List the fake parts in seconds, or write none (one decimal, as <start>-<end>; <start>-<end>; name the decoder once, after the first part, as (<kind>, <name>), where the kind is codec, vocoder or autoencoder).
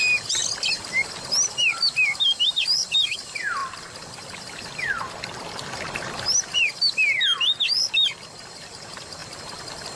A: 0.0-0.4 (vocoder, BigVGAN v2); 2.5-3.6; 5.4-6.7; 8.4-9.2